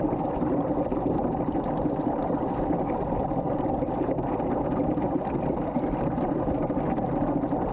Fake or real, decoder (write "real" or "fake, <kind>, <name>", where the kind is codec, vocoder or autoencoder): real